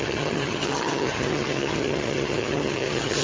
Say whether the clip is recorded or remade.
remade